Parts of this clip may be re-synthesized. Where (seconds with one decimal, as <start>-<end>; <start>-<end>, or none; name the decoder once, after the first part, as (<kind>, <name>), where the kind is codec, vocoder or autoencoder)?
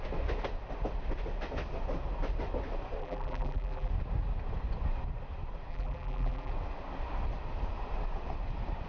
3.0-3.9 (vocoder, BigVGAN v2); 5.7-6.5